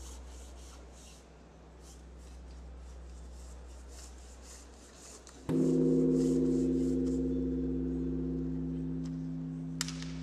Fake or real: real